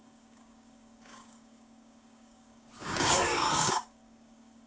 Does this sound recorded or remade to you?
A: remade